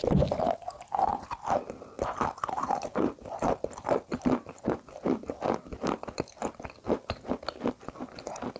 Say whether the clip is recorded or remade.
recorded